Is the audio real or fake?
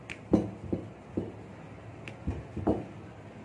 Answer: real